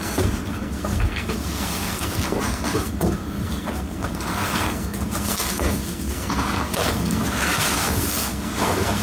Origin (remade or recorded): remade